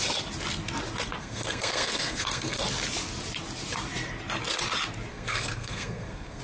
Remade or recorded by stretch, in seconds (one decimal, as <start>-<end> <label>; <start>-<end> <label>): 0.0-1.2 recorded; 1.2-2.6 remade; 2.6-5.1 recorded; 5.1-6.4 remade